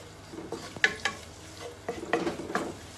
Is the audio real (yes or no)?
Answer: yes